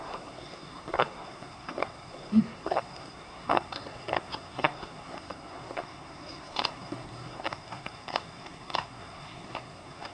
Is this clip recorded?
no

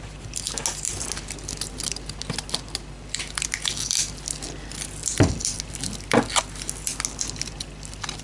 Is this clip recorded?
yes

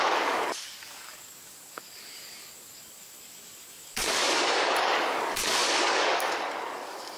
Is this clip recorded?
no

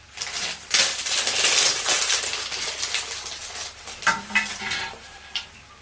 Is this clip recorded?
yes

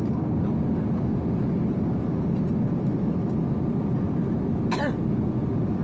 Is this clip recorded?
yes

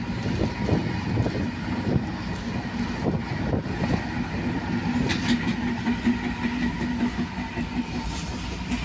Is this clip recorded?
yes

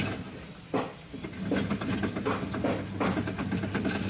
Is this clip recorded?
yes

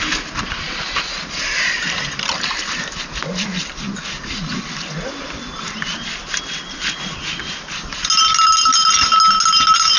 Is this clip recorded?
yes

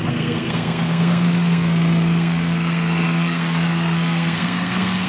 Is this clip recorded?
no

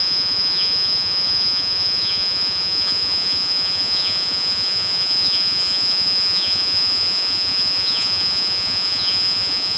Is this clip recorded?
no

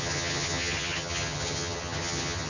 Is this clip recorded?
no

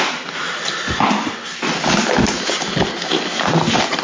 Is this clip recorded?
yes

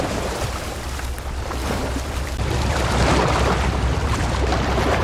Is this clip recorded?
no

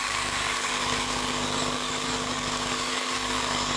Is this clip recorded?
no